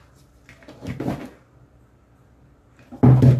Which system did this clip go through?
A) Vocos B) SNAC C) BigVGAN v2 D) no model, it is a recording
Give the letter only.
D